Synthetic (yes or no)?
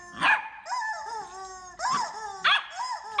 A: no